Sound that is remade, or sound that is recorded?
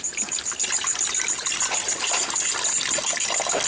recorded